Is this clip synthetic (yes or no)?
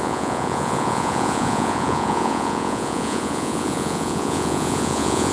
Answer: yes